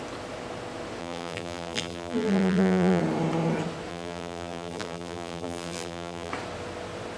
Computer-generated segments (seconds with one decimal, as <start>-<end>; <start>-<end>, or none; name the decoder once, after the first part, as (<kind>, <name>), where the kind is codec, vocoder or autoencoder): 1.0-3.0 (vocoder, BigVGAN v2); 3.9-6.3